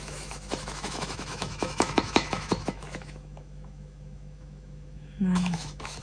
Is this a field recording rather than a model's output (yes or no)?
no